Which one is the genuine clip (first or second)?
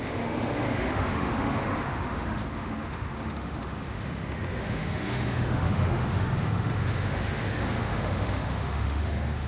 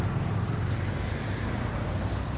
second